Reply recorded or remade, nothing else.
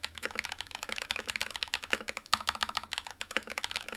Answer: remade